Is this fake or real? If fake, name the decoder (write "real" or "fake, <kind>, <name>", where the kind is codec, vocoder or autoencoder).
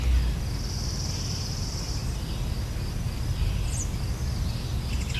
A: real